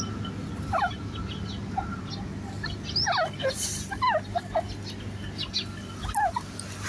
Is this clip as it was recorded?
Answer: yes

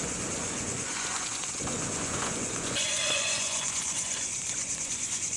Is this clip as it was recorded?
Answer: no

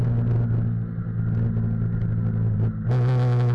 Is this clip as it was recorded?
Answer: yes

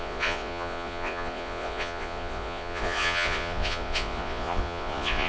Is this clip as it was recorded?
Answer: no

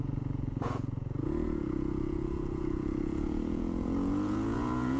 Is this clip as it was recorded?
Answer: no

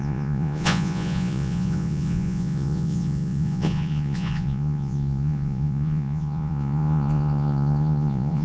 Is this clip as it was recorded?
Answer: no